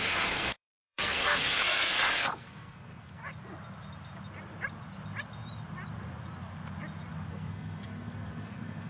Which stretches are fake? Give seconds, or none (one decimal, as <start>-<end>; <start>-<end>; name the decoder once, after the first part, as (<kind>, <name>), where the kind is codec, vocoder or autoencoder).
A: 0.0-3.2 (codec, SNAC); 7.3-8.9